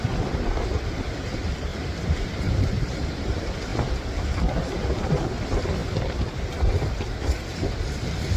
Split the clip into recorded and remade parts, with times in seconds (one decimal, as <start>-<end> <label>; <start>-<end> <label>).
0.0-1.7 recorded; 1.7-2.5 remade; 2.5-8.4 recorded